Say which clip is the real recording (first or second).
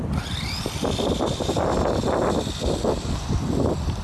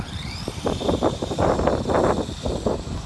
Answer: first